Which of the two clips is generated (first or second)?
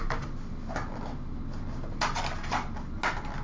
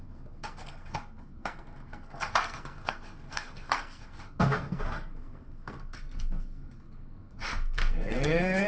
second